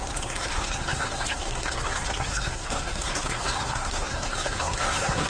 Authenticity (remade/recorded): remade